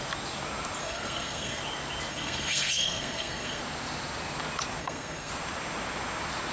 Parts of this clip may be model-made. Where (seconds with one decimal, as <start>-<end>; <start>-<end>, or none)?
0.8-1.6; 2.1-3.6; 4.8-5.3